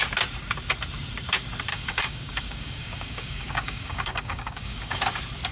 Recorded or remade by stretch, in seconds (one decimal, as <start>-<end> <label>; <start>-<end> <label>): 0.0-1.7 recorded; 1.7-5.0 remade; 5.0-5.5 recorded